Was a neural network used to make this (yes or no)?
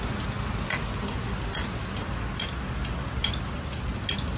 no